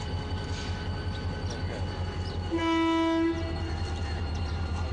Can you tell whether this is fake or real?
real